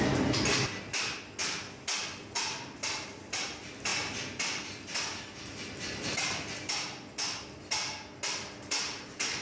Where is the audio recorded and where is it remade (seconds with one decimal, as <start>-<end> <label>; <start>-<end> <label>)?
0.0-9.4 recorded